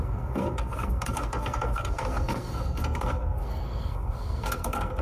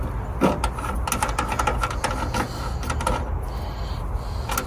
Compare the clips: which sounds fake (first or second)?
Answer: first